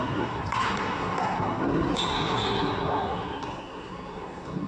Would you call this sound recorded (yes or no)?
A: no